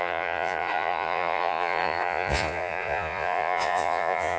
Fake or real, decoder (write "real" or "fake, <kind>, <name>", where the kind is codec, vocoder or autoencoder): fake, vocoder, Vocos